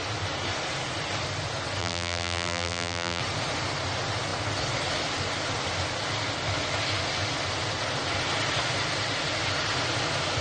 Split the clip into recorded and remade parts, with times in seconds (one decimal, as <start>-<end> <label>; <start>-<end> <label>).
0.0-1.8 recorded; 1.8-3.2 remade; 3.2-10.4 recorded